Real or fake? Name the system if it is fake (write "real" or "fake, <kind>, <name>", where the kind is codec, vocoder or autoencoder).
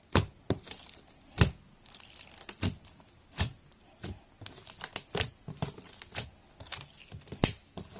real